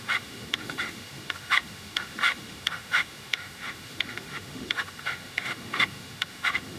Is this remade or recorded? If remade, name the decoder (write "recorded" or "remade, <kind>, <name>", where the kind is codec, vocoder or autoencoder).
remade, autoencoder, DAC-VAE